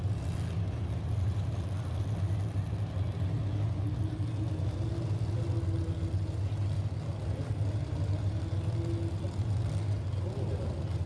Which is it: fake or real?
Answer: real